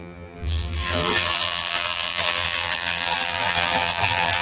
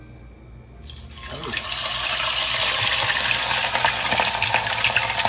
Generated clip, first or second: first